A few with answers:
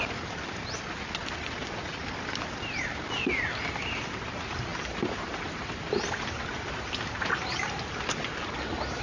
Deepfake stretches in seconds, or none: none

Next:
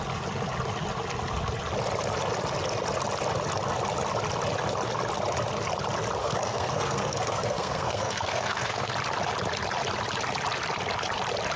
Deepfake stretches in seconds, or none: 6.2-8.9 (codec, SNAC)

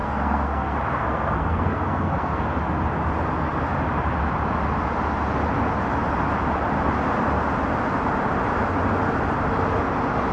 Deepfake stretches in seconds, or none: 0.0-2.4 (codec, SNAC)

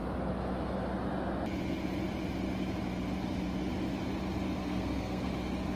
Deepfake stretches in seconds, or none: 4.6-5.3 (codec, SNAC)

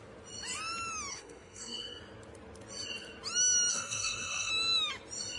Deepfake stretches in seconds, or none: 1.1-2.0 (codec, SNAC); 3.7-4.5

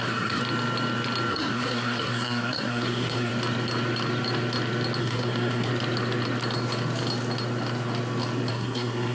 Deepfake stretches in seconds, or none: 0.0-0.4 (codec, SNAC); 1.3-3.3; 5.0-5.7; 8.5-9.1